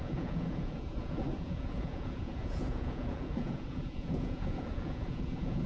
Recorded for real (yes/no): no